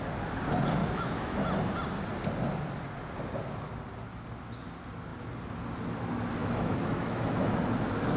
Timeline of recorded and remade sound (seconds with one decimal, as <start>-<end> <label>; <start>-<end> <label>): 0.0-0.8 recorded; 0.8-1.4 remade; 1.4-6.4 recorded; 6.4-7.6 remade; 7.6-8.2 recorded